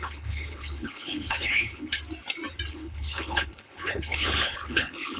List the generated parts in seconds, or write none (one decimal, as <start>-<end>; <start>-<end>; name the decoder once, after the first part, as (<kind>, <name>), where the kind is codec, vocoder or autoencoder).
0.0-2.0 (codec, HILCodec); 2.7-5.2